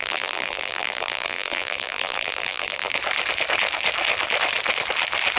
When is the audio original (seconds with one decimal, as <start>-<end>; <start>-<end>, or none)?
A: 2.9-5.4